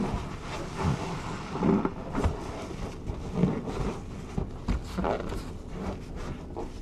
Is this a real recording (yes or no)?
yes